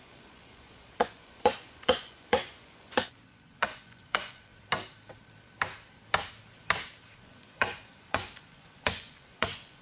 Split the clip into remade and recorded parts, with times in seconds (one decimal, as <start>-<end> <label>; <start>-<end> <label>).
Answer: 0.0-4.5 remade; 4.5-7.2 recorded; 7.2-9.8 remade